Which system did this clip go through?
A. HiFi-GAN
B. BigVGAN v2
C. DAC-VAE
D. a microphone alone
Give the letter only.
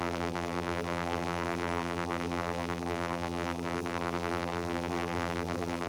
B